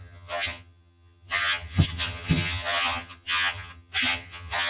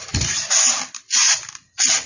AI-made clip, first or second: first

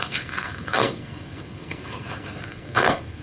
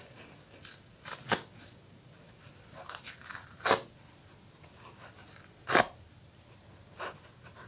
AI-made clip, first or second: first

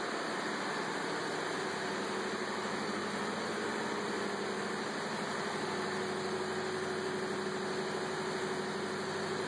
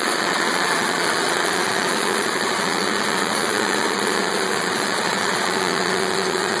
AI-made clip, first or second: second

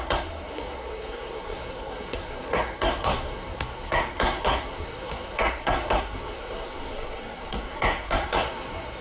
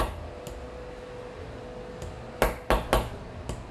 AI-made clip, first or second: first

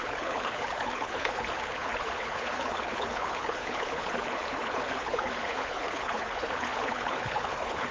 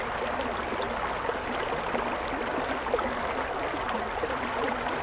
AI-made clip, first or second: first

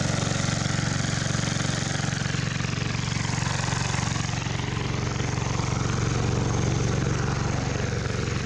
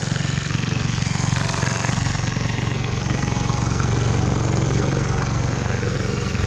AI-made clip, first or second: second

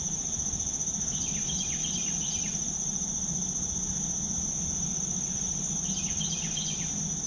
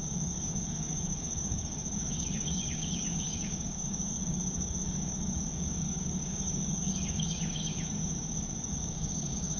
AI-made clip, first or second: second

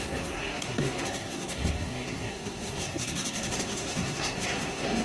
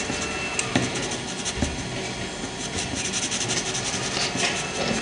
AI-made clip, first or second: first